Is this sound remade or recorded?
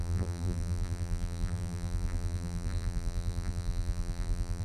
remade